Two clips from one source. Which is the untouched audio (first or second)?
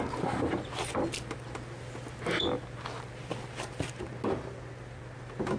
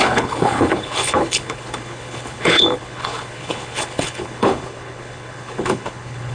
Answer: first